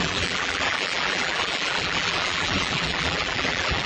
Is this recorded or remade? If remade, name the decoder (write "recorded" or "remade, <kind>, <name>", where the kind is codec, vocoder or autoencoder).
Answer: remade, vocoder, BigVGAN v2